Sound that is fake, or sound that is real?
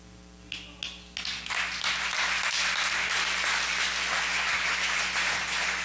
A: real